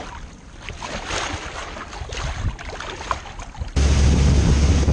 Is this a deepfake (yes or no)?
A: no